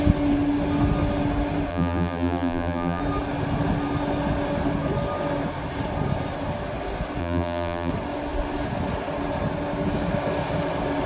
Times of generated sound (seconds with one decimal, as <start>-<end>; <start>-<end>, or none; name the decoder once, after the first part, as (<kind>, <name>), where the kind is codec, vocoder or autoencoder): 1.7-3.0 (vocoder, BigVGAN v2); 7.2-7.9